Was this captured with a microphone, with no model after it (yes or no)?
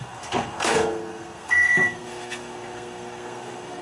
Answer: no